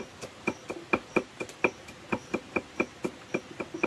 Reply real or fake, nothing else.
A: real